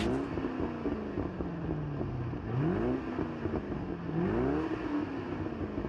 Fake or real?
real